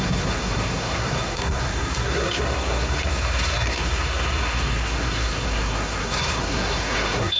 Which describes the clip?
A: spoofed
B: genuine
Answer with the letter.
A